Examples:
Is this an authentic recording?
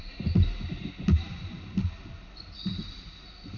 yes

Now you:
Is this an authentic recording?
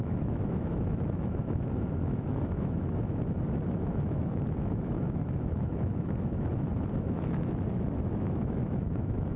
no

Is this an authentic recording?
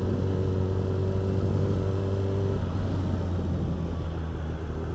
yes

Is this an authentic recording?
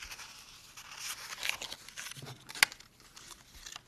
yes